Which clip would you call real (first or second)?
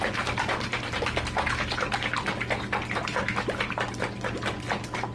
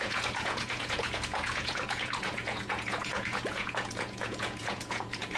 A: first